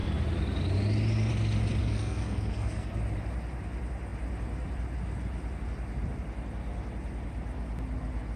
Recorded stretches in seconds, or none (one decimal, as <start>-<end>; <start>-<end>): 0.0-1.8; 3.0-8.4